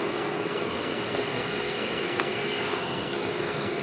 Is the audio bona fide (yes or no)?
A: no